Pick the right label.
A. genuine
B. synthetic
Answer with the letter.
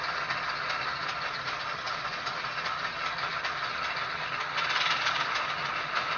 A